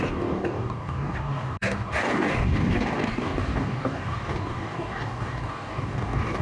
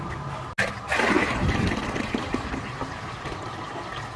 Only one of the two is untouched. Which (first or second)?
second